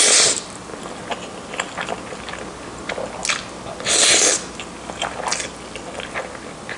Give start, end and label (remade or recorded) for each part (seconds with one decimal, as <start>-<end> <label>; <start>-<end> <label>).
0.0-0.7 remade; 0.7-3.9 recorded; 3.9-6.8 remade